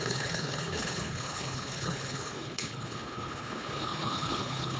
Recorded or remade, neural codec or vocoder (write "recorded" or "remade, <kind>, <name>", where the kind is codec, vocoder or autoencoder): remade, codec, HILCodec